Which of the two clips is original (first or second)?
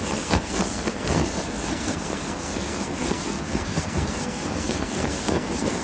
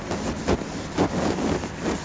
second